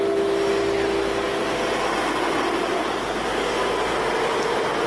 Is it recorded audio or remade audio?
recorded